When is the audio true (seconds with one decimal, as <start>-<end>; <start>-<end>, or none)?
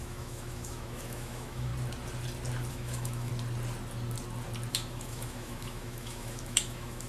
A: 1.7-2.7; 3.3-4.7